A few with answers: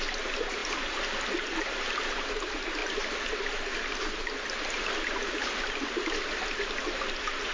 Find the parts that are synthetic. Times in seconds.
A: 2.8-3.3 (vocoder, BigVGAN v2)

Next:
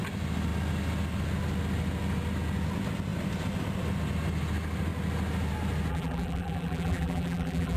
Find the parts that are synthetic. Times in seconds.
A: 5.9-7.8 (vocoder, BigVGAN v2)

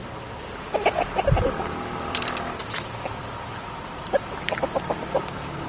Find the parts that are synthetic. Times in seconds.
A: 1.7-5.7 (vocoder, BigVGAN v2)

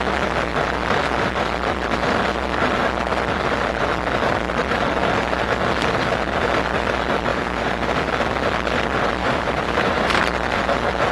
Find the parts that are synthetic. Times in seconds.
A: 7.3-8.1 (vocoder, BigVGAN v2); 9.2-10.2

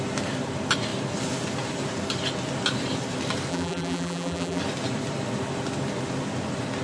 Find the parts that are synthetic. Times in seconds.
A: 3.5-4.6 (vocoder, BigVGAN v2)

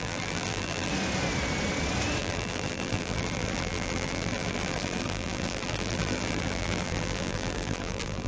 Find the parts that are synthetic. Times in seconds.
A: 0.0-0.9 (vocoder, BigVGAN v2); 2.2-8.3

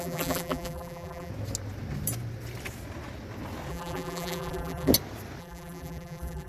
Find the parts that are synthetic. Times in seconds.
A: 0.0-1.3 (vocoder, BigVGAN v2); 3.7-4.9; 5.4-6.5

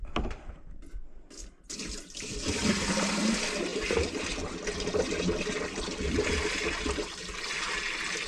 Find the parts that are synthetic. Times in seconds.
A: none